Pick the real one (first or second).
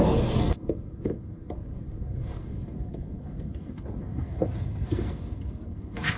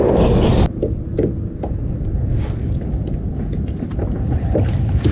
second